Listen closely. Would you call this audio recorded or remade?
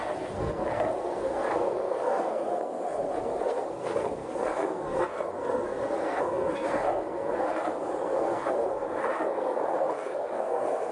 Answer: remade